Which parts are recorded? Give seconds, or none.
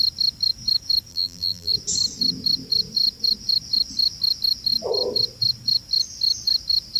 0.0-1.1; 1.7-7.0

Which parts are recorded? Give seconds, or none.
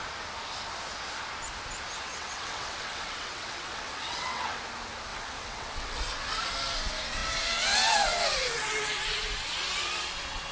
0.0-2.1; 4.6-5.1; 6.0-10.5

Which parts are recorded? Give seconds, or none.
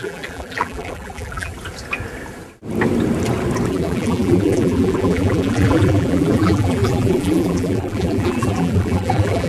1.5-3.7